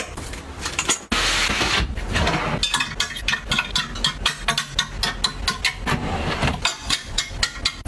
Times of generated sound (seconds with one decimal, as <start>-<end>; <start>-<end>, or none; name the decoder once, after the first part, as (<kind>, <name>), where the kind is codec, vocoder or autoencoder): 6.7-7.3 (vocoder, Vocos)